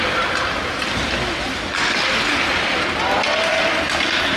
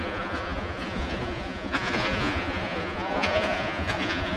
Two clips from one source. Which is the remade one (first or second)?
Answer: second